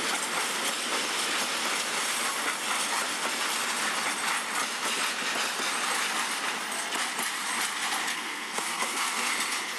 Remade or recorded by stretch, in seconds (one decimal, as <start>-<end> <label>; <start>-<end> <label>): 0.0-8.1 recorded; 8.1-9.3 remade; 9.3-9.8 recorded